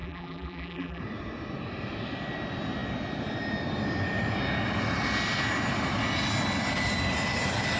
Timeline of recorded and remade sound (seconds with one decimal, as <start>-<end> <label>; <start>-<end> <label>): 0.0-1.0 remade; 1.0-7.8 recorded